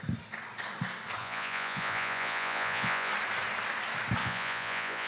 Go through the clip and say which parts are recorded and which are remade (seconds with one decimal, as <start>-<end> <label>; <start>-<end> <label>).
0.0-1.2 recorded; 1.2-3.1 remade; 3.1-4.2 recorded; 4.2-5.1 remade